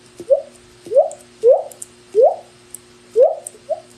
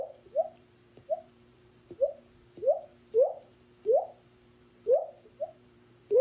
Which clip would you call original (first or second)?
first